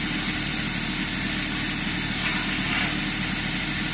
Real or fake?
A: real